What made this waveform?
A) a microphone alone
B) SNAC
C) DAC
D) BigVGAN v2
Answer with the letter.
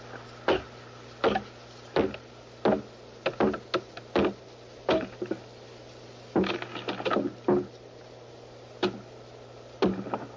A